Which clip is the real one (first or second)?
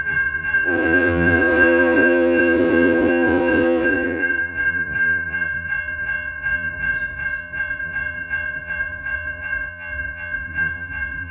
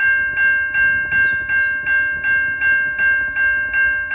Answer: second